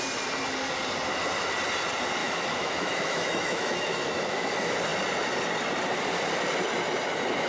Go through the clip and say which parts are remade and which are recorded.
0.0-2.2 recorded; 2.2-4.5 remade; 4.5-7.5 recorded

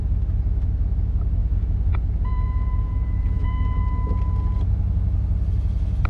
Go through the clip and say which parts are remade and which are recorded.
0.0-1.4 recorded; 1.4-3.8 remade; 3.8-6.1 recorded

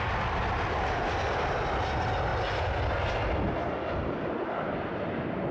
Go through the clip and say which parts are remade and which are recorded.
0.0-5.5 recorded

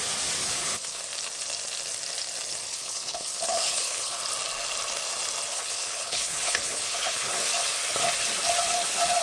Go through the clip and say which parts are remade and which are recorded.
0.0-0.4 recorded; 0.4-1.0 remade; 1.0-2.7 recorded; 2.7-4.2 remade; 4.2-5.5 recorded; 5.5-7.3 remade; 7.3-9.2 recorded